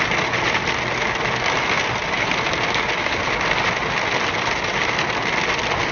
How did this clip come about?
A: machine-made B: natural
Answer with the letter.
B